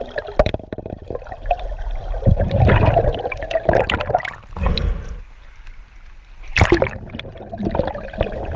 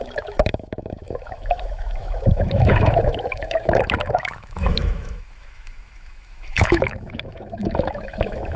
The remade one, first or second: second